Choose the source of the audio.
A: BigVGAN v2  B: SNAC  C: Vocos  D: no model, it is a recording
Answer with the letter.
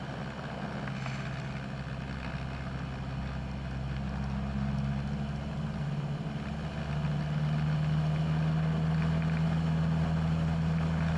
D